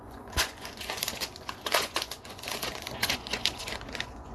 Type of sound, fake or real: fake